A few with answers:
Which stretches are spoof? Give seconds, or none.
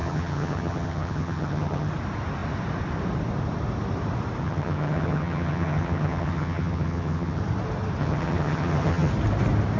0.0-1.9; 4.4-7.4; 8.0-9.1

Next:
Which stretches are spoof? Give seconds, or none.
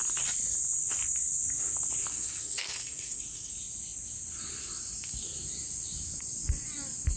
2.1-3.5